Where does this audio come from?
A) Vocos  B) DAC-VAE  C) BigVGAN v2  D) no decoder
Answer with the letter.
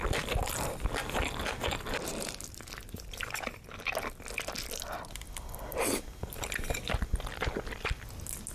D